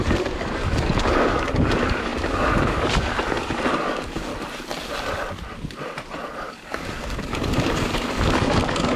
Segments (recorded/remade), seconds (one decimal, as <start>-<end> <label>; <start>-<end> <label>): 0.0-4.3 remade; 4.3-6.5 recorded; 6.5-9.0 remade